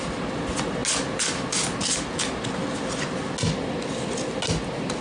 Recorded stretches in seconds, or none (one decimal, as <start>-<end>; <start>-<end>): 0.0-5.0